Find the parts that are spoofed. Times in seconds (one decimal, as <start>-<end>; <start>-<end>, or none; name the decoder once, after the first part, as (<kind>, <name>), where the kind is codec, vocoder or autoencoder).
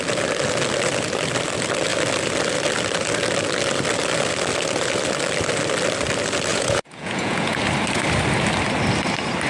6.5-7.6 (vocoder, Vocos)